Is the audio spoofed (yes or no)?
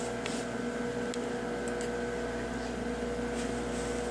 no